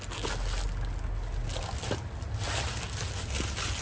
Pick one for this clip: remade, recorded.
recorded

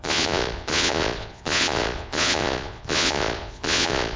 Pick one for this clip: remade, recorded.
remade